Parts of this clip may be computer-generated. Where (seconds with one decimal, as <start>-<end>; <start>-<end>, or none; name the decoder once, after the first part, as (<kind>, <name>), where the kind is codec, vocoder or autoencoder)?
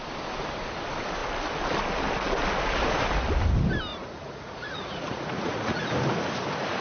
3.9-5.9 (vocoder, Vocos)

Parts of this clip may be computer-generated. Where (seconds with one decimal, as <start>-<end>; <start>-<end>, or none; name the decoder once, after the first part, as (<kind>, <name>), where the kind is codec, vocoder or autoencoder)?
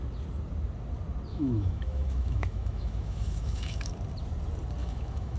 1.3-3.9 (autoencoder, DAC-VAE); 4.8-5.4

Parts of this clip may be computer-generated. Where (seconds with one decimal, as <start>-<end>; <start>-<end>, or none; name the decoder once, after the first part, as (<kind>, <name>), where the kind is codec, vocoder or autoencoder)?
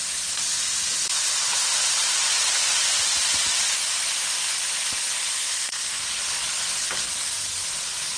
5.3-6.0 (codec, SNAC)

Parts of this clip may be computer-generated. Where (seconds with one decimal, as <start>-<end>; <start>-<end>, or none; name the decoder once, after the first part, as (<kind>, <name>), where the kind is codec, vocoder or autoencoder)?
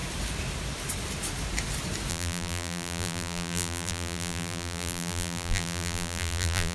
2.1-6.7 (vocoder, BigVGAN v2)